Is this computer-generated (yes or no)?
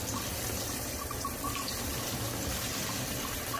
no